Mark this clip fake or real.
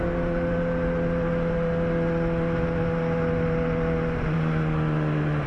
real